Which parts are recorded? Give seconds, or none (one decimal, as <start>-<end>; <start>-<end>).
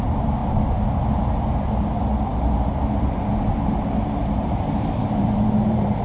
0.4-1.4